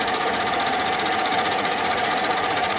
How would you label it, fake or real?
fake